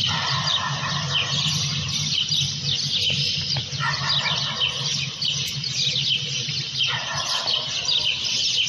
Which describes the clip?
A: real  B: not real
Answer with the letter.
A